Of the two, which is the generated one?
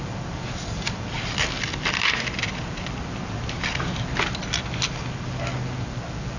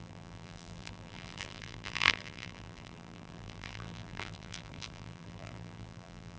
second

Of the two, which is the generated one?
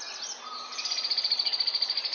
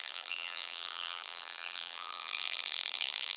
second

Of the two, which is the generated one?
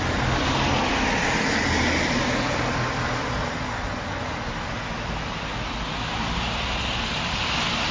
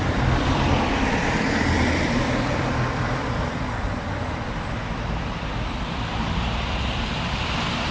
second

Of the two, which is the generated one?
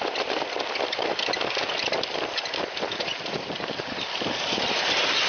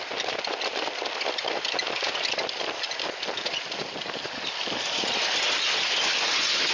first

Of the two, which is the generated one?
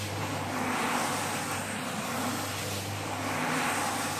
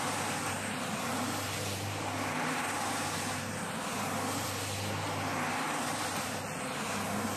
second